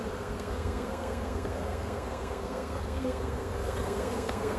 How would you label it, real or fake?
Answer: fake